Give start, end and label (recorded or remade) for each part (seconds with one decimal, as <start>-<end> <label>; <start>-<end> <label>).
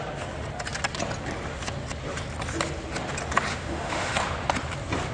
0.0-3.5 recorded; 3.5-4.1 remade; 4.1-5.1 recorded